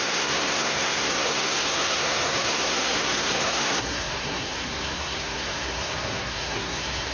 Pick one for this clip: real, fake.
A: fake